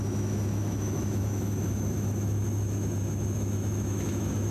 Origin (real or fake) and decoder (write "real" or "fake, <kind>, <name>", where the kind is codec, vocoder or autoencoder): fake, autoencoder, DAC-VAE